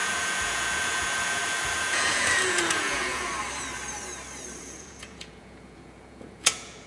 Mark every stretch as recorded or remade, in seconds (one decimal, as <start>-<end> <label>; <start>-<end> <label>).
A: 0.0-3.3 remade; 3.3-4.6 recorded; 4.6-6.9 remade